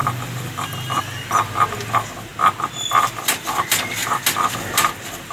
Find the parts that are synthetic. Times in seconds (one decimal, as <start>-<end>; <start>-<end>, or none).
0.0-2.3; 2.9-4.0; 4.7-5.3